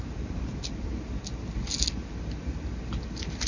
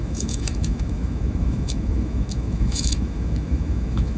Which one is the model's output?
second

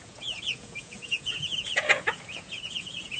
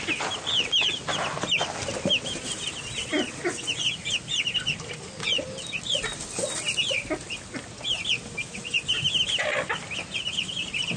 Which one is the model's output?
first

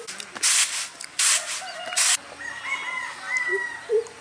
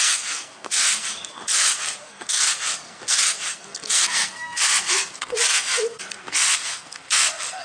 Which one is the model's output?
second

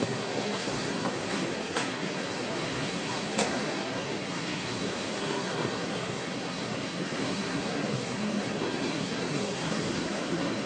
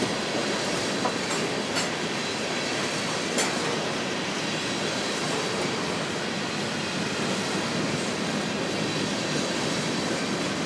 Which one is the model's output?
first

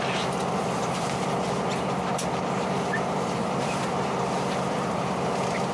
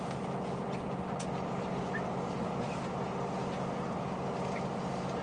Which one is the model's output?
first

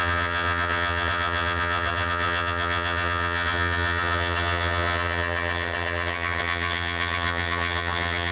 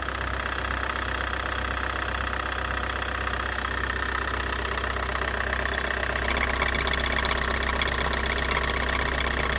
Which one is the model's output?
first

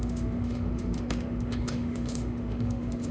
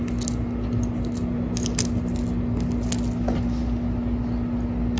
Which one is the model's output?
first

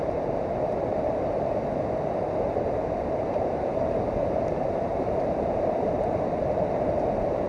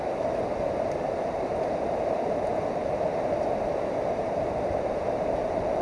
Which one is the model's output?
first